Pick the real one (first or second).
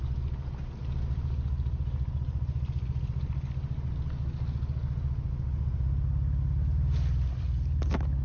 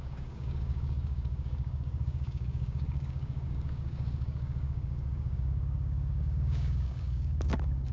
first